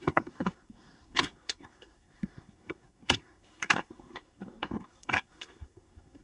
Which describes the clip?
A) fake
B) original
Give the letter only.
A